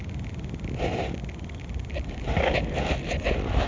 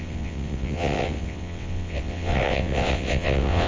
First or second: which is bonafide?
first